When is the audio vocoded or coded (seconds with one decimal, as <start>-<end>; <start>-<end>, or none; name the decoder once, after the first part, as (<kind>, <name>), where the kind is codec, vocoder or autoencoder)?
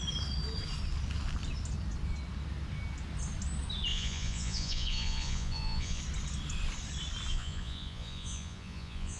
3.9-6.0 (vocoder, Vocos); 7.3-9.2